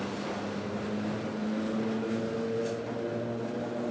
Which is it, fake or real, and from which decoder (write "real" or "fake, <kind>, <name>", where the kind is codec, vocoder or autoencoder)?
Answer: real